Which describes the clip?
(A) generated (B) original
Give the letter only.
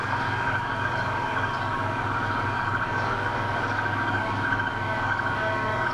A